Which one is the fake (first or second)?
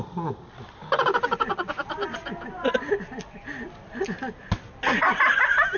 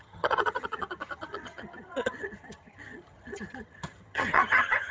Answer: second